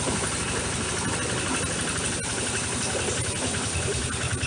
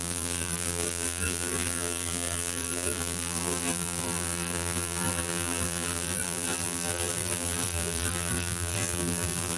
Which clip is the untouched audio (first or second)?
first